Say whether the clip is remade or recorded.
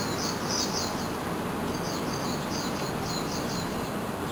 remade